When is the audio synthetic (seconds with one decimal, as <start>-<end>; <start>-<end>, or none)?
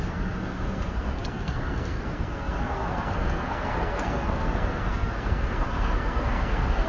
0.0-6.9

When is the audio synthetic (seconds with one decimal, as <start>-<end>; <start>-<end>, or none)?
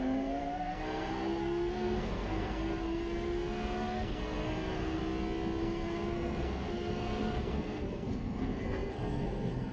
0.0-5.0; 5.6-9.7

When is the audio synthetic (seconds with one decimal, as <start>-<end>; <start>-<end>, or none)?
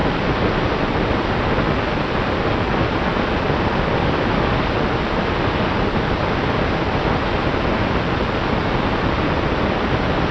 none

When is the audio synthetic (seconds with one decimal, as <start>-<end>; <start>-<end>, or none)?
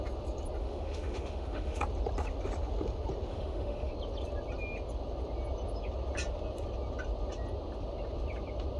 0.6-1.8; 3.3-3.9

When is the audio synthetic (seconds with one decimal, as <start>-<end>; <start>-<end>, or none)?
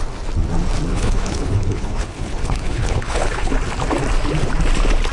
0.9-3.5